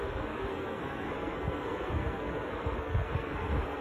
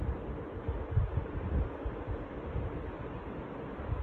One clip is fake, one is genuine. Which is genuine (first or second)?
second